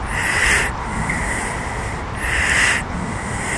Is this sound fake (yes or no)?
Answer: no